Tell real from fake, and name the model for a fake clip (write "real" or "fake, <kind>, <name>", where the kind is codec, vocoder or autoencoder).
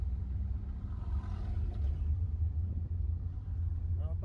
real